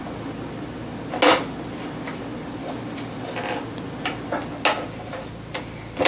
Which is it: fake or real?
real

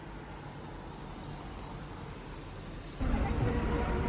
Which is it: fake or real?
real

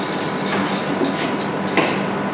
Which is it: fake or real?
real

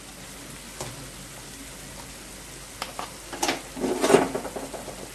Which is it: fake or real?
real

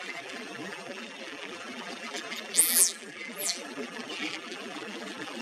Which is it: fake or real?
fake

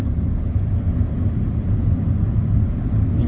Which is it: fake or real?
real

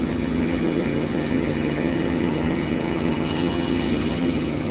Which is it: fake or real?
fake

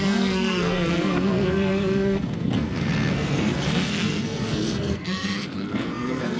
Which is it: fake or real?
fake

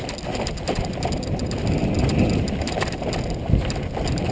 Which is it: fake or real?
real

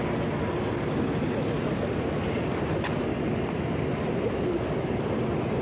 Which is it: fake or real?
real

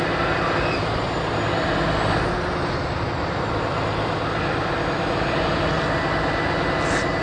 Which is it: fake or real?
real